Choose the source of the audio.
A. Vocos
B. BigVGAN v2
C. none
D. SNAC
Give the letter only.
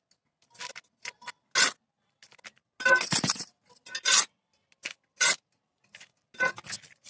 C